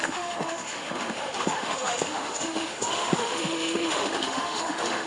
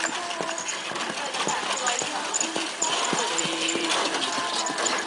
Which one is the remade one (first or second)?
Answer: first